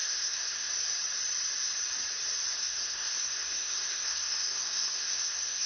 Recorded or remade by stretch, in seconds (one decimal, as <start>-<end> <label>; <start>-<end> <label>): 0.0-0.7 remade; 0.7-2.6 recorded; 2.6-5.7 remade